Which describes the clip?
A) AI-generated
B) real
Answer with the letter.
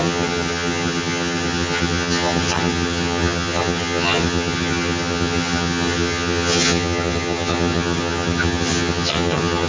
A